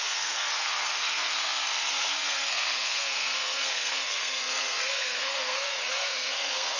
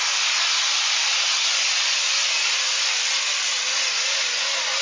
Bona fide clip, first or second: second